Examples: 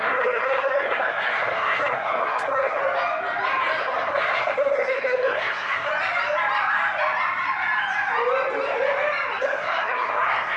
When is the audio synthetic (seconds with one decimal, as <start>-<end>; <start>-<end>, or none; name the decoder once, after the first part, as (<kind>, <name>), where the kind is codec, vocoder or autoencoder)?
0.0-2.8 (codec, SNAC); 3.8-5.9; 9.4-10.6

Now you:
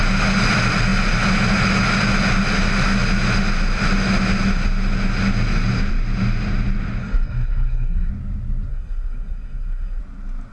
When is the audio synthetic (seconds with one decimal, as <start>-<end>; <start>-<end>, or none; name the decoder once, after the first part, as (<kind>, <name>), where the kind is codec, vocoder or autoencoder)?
7.0-8.1 (codec, SNAC); 8.7-10.0

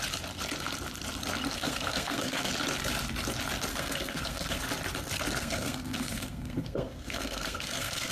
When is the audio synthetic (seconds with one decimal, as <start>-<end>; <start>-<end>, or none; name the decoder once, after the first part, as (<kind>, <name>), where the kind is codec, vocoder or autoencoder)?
1.5-2.5 (codec, SNAC); 3.7-4.6; 5.4-8.1